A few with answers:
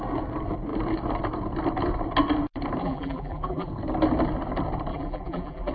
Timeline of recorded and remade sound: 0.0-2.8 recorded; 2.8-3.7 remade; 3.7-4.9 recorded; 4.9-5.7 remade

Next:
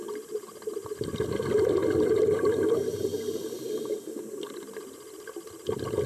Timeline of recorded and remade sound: 0.0-6.1 recorded

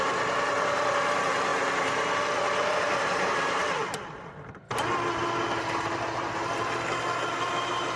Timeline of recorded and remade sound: 0.0-1.5 remade; 1.5-2.7 recorded; 2.7-3.6 remade; 3.6-7.3 recorded; 7.3-8.0 remade

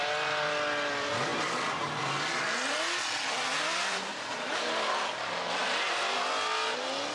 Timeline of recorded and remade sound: 0.0-3.5 recorded; 3.5-4.9 remade; 4.9-5.6 recorded; 5.6-6.2 remade; 6.2-7.1 recorded

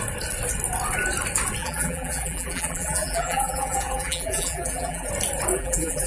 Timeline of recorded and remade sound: 0.0-1.6 recorded; 1.6-5.1 remade; 5.1-5.5 recorded; 5.5-6.1 remade

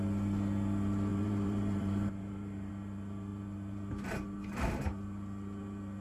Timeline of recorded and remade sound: 0.0-1.1 recorded; 1.1-2.7 remade; 2.7-6.0 recorded

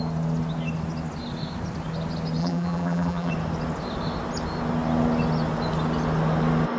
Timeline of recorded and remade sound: 0.0-2.4 recorded; 2.4-3.3 remade; 3.3-6.8 recorded